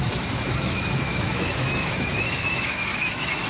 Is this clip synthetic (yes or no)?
yes